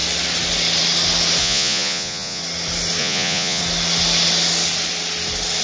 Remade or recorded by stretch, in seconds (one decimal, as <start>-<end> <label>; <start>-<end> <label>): 0.0-1.4 recorded; 1.4-2.4 remade; 2.4-3.0 recorded; 3.0-3.6 remade; 3.6-5.6 recorded